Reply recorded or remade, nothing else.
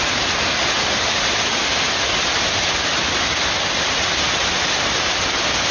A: remade